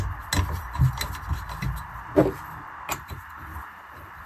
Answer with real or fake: real